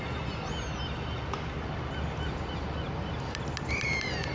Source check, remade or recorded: recorded